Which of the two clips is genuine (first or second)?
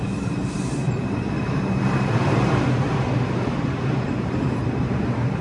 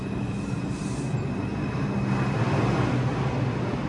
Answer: second